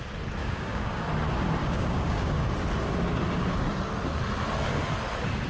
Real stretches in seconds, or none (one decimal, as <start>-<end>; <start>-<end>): 0.0-0.4; 1.1-1.6; 2.4-5.5